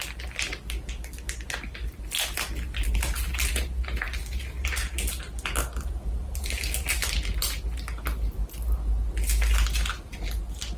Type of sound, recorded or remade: recorded